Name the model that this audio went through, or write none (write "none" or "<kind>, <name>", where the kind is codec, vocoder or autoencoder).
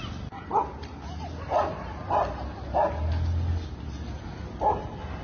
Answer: none